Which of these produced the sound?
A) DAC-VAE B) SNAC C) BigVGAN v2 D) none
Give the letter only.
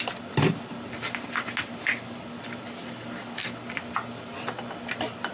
D